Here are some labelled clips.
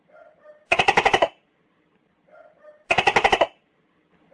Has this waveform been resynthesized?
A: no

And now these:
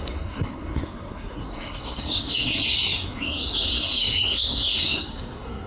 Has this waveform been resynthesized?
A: yes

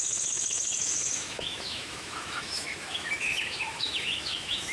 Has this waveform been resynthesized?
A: yes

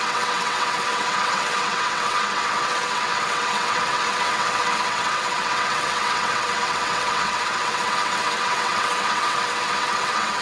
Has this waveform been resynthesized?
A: yes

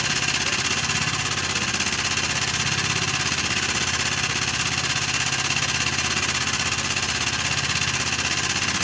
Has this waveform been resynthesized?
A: no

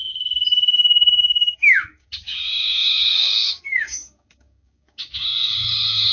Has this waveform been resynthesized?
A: yes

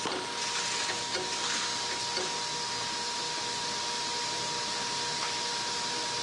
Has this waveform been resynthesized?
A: no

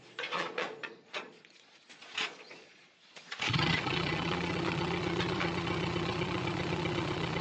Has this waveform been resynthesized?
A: yes